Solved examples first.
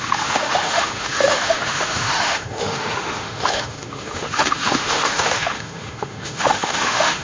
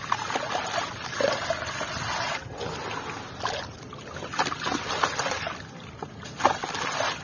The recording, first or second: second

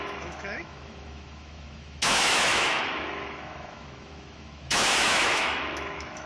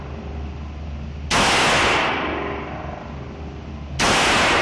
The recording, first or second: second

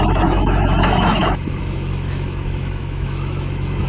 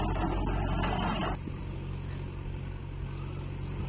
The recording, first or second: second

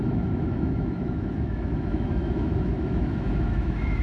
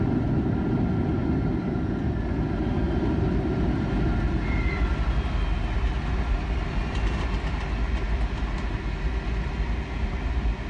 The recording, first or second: second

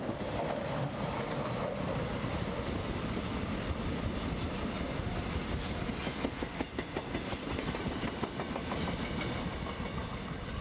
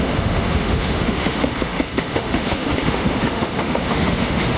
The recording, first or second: first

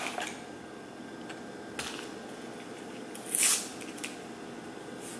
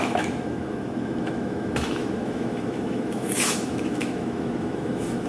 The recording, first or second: first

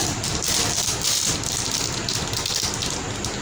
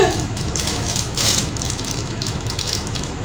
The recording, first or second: first